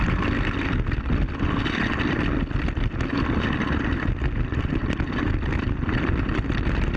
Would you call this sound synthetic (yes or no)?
no